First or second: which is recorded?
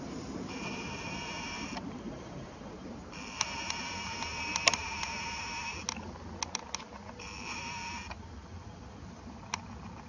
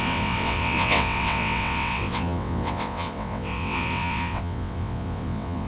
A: first